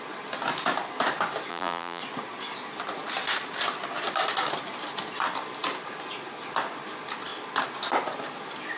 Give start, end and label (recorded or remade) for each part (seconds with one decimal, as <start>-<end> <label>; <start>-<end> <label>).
0.0-1.5 recorded; 1.5-2.0 remade; 2.0-8.8 recorded